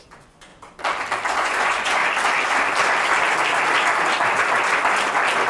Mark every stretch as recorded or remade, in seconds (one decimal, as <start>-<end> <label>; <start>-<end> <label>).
0.0-0.5 remade; 0.5-1.3 recorded; 1.3-2.0 remade; 2.0-5.5 recorded